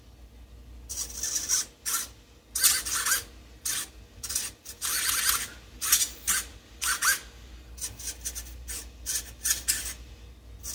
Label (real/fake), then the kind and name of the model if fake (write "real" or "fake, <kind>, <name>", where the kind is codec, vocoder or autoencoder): real